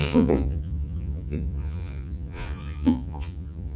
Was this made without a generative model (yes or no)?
no